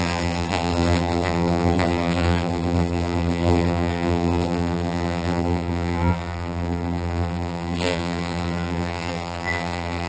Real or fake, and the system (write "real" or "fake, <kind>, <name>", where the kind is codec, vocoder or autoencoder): fake, vocoder, BigVGAN v2